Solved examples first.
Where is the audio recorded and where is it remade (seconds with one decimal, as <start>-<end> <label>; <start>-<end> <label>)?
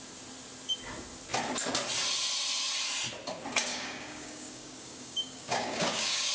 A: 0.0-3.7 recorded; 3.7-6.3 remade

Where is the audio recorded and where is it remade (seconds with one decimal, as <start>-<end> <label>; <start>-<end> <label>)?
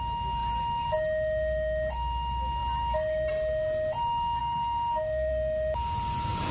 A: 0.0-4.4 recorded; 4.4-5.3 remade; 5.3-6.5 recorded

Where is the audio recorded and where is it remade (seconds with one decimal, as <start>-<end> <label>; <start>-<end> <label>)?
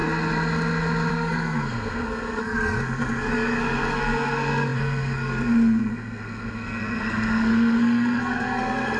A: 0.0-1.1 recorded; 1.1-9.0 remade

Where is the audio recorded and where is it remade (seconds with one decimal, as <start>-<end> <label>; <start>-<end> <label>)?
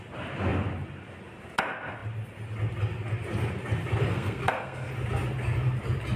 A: 0.0-4.1 recorded; 4.1-4.9 remade; 4.9-6.2 recorded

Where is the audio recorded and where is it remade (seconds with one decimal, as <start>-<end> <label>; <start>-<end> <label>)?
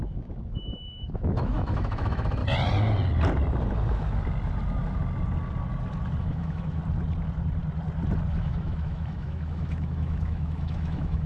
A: 0.0-2.4 remade; 2.4-6.2 recorded; 6.2-6.8 remade; 6.8-8.3 recorded; 8.3-11.3 remade